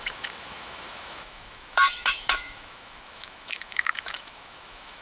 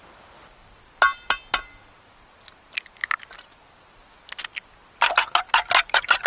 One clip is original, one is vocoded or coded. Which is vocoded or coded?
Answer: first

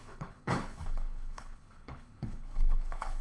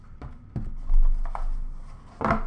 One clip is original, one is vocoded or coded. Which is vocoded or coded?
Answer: first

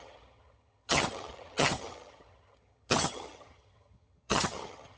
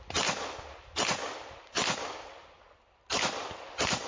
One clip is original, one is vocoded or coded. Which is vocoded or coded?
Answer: first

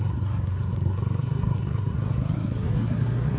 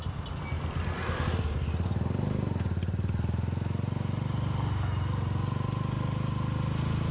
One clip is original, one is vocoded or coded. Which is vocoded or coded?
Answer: first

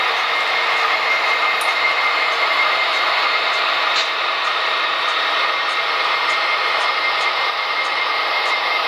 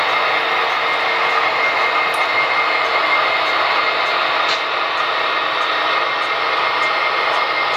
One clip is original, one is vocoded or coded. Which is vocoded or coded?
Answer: first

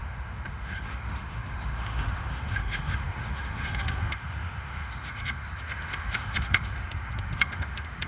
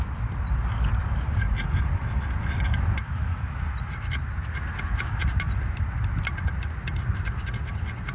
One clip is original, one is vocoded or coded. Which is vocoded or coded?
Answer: first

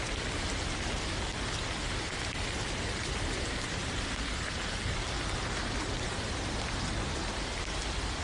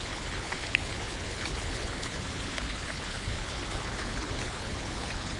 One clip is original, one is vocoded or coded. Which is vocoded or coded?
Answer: second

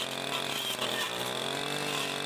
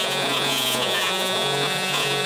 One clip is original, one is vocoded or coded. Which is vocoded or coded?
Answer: second